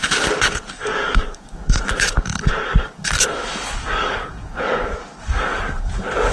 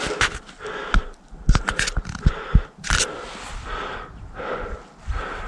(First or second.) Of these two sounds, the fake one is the first